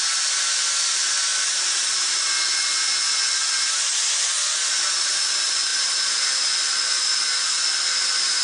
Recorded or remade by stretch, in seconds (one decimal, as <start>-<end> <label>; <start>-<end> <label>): 0.0-8.4 recorded